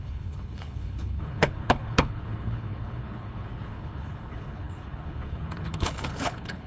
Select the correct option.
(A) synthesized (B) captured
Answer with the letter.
A